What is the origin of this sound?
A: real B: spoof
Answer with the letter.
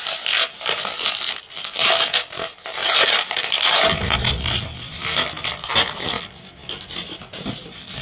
A